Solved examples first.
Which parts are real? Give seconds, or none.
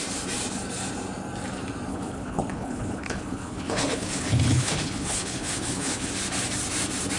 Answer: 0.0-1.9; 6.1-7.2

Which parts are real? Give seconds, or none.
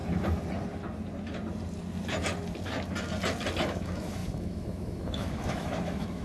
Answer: 0.0-3.7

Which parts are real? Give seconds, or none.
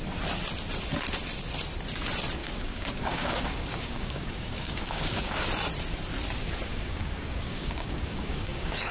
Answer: 0.0-2.4; 5.4-6.7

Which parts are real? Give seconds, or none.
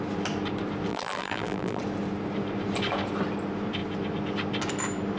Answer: 0.0-0.9; 1.8-5.2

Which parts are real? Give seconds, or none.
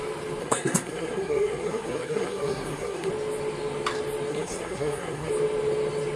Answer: 0.0-0.4; 3.1-4.3; 5.3-6.2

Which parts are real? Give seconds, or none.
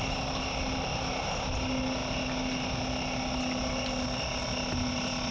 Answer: 0.0-5.3